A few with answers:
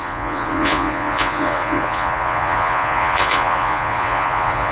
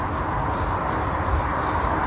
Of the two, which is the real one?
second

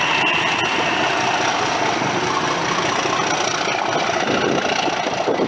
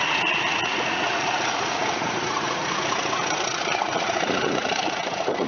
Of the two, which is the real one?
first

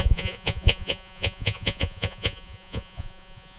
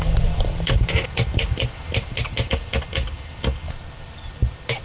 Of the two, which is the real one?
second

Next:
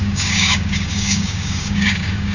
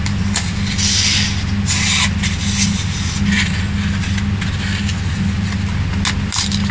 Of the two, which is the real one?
second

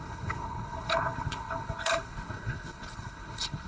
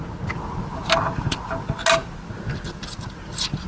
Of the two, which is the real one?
second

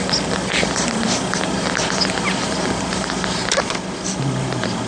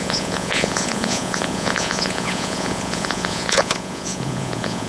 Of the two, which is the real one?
first